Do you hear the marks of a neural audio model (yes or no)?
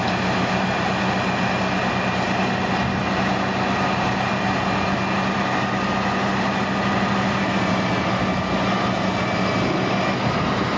no